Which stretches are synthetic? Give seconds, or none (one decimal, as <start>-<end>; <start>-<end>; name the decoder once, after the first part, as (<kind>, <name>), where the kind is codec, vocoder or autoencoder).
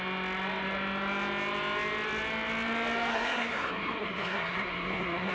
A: 3.1-5.3 (codec, SNAC)